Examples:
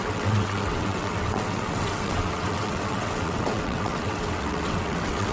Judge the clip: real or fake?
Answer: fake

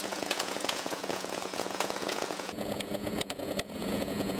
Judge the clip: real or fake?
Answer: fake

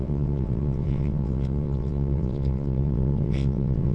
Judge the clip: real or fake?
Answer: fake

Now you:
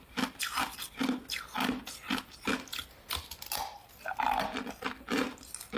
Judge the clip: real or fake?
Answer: real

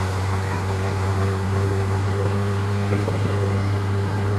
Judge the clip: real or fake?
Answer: fake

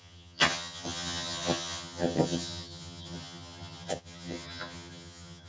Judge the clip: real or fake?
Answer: fake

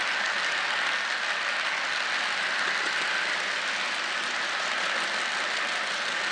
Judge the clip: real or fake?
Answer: real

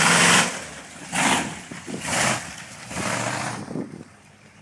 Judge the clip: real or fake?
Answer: fake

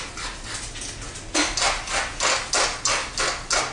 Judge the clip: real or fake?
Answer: real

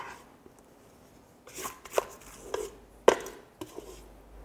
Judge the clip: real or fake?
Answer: real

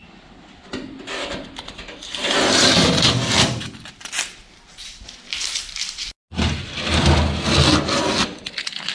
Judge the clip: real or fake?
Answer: real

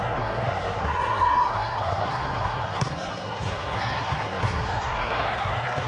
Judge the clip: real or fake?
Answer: fake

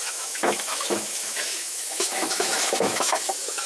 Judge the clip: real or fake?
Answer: fake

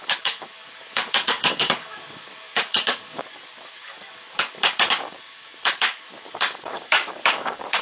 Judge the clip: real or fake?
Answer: fake